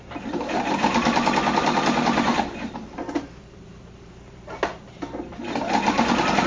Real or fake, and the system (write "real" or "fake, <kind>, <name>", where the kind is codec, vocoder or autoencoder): real